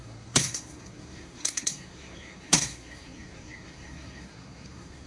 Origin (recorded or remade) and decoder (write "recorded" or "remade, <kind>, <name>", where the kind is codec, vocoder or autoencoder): remade, codec, SNAC